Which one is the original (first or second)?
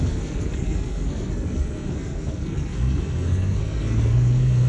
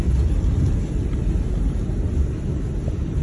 second